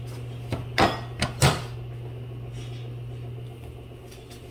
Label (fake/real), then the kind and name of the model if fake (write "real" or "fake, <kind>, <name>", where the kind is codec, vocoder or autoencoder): real